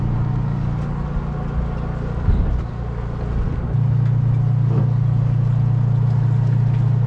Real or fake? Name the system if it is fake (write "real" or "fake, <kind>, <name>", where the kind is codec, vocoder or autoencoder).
real